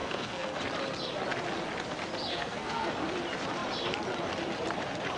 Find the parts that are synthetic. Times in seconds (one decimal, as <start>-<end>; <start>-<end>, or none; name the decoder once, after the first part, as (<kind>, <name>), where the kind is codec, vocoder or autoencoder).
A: 0.0-0.6 (codec, SNAC); 2.3-2.9